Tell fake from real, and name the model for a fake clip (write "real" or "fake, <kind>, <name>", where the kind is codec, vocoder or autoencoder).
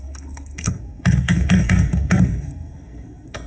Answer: fake, codec, SNAC